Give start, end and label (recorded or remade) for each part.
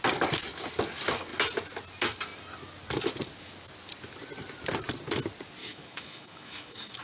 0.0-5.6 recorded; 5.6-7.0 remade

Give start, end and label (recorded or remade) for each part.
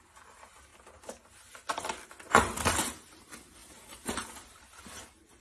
0.0-5.4 recorded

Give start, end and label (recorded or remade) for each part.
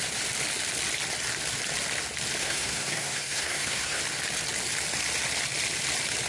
0.0-2.4 recorded; 2.4-4.0 remade; 4.0-6.3 recorded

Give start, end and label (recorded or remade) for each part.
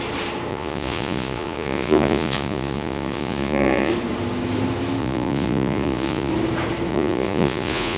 0.0-0.5 recorded; 0.5-3.9 remade; 3.9-5.0 recorded; 5.0-6.3 remade; 6.3-6.9 recorded; 6.9-8.0 remade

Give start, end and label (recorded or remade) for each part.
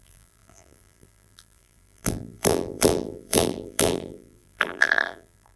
0.0-5.6 remade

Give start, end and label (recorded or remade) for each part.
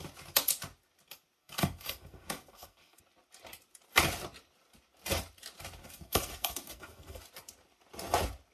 0.0-1.4 recorded; 1.4-3.0 remade; 3.0-5.8 recorded; 5.8-7.2 remade; 7.2-8.5 recorded